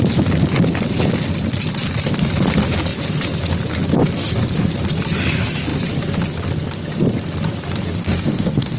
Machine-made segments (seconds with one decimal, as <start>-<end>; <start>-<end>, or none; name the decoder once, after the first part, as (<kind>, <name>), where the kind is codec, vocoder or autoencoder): 8.0-8.8 (codec, DAC)